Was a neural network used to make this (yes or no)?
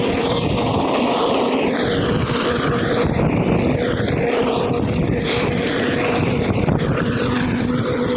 no